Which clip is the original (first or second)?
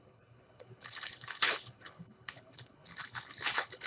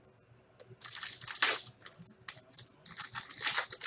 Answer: second